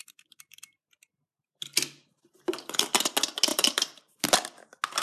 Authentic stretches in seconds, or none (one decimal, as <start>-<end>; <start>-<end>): 3.0-3.5; 4.2-5.0